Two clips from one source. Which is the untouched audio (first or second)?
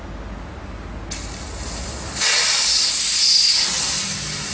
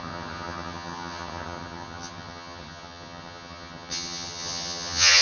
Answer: first